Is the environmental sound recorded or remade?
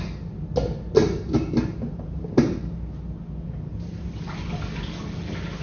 recorded